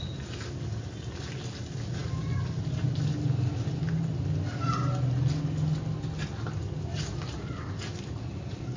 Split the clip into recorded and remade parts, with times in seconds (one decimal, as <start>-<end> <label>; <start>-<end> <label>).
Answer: 0.0-8.8 recorded